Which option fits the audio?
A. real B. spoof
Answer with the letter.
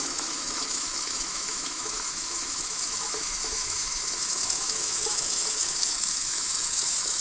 B